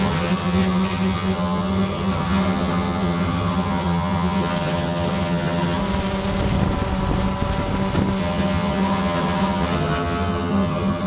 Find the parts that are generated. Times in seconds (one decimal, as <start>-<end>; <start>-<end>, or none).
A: 0.0-5.8; 8.2-11.1